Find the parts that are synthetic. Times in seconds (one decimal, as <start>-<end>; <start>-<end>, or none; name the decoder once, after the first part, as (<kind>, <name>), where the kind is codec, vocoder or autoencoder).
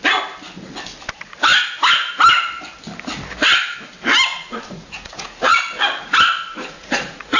4.3-5.6 (vocoder, Vocos); 6.5-7.4